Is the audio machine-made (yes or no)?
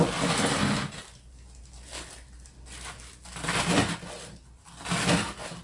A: no